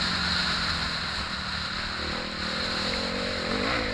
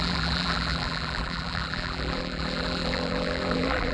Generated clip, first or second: second